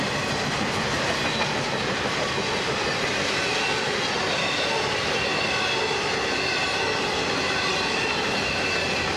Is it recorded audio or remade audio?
recorded